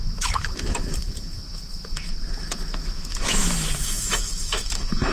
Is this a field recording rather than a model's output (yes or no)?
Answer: no